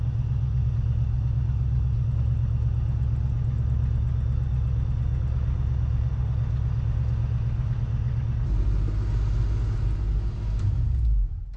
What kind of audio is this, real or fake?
real